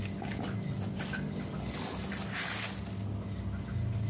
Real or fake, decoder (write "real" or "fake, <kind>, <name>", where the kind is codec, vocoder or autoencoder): real